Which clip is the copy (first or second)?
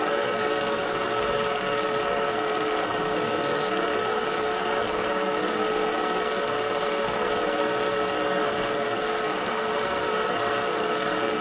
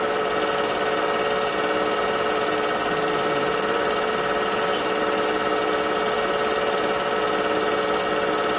first